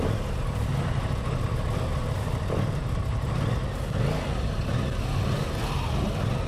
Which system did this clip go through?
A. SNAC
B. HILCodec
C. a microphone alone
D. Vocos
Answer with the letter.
C